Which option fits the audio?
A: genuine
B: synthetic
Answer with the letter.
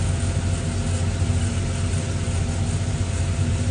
A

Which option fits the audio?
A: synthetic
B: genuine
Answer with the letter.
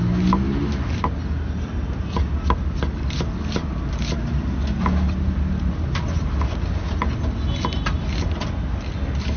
B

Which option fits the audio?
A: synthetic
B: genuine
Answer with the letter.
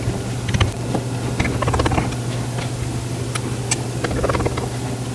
B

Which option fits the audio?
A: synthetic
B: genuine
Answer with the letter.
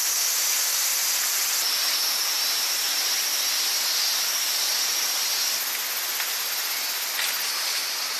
B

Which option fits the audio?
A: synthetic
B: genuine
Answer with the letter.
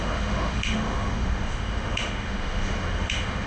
A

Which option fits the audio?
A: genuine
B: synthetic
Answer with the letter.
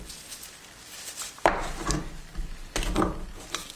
A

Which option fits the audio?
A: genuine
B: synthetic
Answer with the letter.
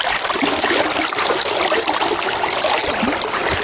A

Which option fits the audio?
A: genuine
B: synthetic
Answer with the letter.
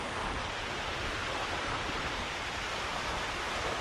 A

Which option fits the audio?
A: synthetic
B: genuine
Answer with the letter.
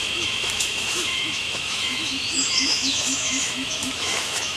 A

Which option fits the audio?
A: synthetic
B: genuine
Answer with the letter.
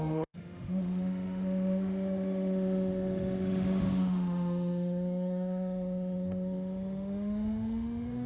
A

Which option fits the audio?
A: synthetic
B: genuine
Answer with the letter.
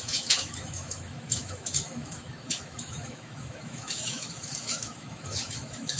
A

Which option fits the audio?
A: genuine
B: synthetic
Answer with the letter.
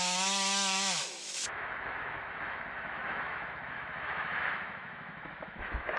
B